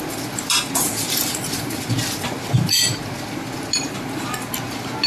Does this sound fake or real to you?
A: real